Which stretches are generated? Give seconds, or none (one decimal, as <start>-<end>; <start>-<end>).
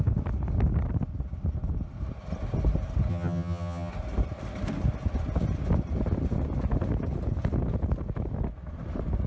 3.1-3.9